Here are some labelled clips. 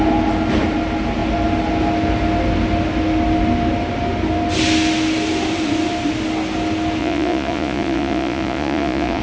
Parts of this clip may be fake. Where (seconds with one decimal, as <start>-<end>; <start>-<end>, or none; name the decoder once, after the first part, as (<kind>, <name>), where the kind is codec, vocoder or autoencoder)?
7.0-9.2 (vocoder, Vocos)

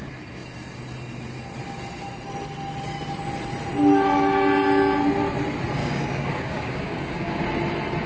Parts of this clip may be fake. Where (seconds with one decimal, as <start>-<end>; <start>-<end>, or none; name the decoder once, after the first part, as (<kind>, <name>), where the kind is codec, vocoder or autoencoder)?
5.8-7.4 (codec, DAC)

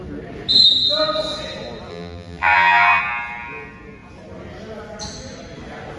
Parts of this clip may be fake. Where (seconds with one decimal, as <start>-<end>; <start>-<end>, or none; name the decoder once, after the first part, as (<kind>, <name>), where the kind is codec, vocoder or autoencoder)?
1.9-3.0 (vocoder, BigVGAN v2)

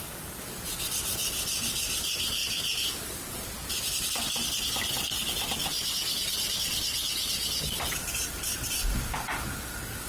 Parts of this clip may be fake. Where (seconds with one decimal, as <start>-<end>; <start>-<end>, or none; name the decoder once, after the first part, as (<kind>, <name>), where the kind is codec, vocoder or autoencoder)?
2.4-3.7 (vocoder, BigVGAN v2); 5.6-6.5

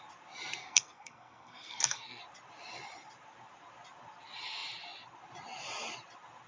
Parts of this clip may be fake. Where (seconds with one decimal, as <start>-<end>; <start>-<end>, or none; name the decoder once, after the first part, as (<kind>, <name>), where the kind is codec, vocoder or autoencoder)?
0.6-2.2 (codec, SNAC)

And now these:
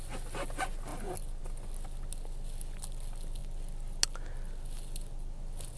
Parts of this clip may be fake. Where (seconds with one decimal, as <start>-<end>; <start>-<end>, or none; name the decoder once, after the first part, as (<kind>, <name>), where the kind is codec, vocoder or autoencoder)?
none

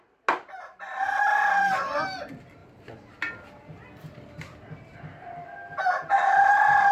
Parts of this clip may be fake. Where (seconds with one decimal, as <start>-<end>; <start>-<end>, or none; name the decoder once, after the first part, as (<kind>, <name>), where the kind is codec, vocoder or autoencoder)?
none

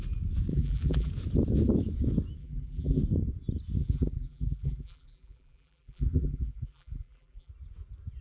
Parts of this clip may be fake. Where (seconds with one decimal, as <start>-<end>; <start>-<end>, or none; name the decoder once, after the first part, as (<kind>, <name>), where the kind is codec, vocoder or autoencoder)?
0.5-1.1 (vocoder, BigVGAN v2); 2.4-3.0; 3.8-7.5